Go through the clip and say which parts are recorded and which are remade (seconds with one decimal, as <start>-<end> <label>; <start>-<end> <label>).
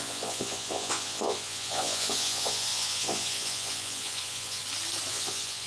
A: 0.0-4.6 remade; 4.6-5.1 recorded; 5.1-5.7 remade